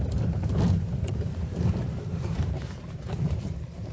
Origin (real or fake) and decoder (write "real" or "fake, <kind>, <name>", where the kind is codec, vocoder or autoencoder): fake, vocoder, BigVGAN v2